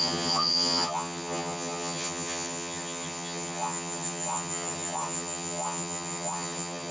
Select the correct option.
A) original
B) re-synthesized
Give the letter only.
B